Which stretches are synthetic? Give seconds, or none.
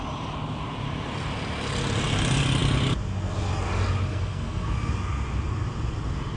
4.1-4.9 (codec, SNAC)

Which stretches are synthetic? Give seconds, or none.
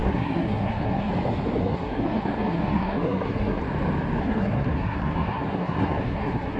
0.0-1.1 (codec, SNAC); 1.6-3.6; 4.2-6.6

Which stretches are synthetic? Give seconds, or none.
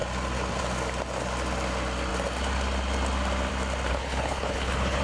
3.9-5.0 (codec, HILCodec)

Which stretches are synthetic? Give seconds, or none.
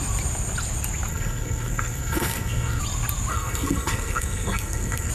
1.1-2.8 (codec, SNAC); 3.3-5.1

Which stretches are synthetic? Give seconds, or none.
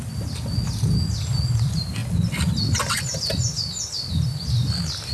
3.3-4.4 (vocoder, BigVGAN v2)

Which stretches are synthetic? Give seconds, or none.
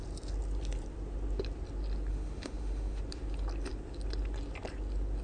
2.1-3.0 (autoencoder, DAC-VAE)